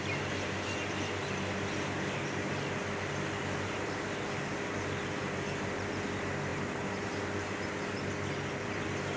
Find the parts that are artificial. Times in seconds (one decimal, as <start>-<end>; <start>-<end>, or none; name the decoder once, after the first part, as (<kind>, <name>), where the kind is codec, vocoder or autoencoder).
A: none